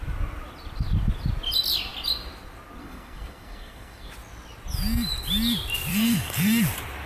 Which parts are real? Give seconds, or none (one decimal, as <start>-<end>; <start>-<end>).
0.0-2.8; 4.1-5.9; 6.6-7.1